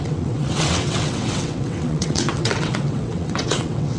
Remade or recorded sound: remade